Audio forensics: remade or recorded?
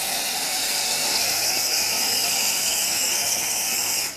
remade